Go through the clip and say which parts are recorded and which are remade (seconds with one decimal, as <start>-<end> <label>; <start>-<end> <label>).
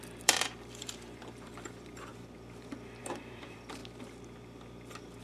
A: 0.0-2.1 remade; 2.1-3.0 recorded; 3.0-3.8 remade; 3.8-5.2 recorded